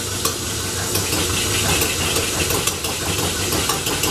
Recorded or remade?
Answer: recorded